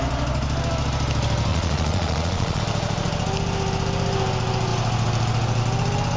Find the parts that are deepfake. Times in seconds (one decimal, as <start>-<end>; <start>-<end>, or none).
1.5-2.6